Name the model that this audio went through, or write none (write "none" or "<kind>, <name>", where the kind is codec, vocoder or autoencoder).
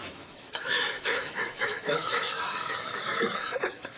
autoencoder, DAC-VAE